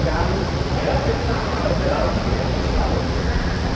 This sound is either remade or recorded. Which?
remade